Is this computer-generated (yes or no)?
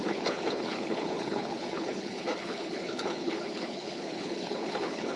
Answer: yes